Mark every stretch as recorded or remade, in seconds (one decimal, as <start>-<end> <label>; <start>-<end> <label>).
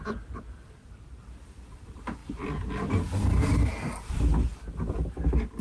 0.0-5.6 recorded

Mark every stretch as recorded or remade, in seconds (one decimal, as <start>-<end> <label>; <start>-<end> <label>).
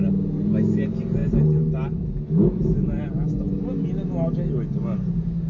0.0-5.5 recorded